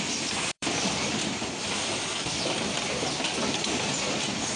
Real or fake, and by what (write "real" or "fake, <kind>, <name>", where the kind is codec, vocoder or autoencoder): fake, vocoder, BigVGAN v2